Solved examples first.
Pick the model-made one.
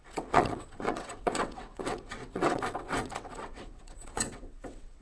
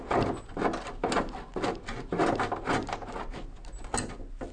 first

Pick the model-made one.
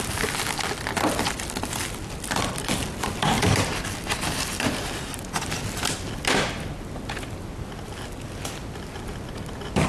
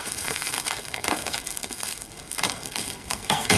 second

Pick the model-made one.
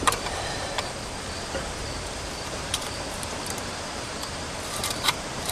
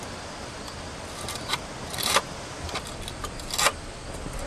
first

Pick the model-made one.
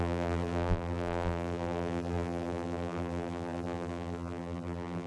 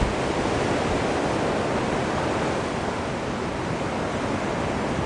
first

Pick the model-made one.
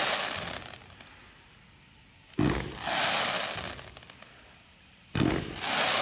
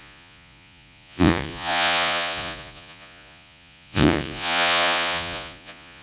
second